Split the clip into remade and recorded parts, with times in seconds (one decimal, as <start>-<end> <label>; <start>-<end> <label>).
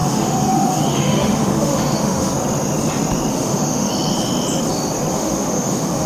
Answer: 0.0-2.3 remade; 2.3-3.3 recorded; 3.3-3.9 remade; 3.9-5.1 recorded; 5.1-6.1 remade